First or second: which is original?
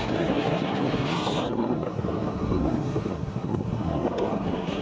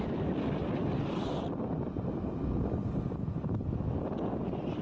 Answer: second